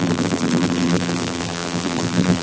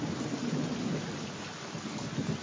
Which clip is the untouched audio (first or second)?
second